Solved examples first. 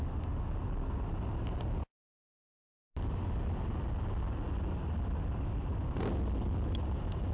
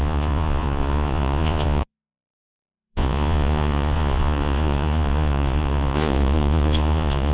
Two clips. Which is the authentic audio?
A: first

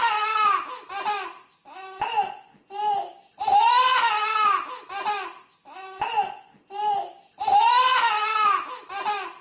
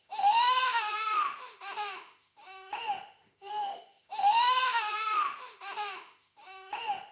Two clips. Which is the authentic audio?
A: first